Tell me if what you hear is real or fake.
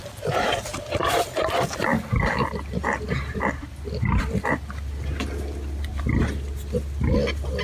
real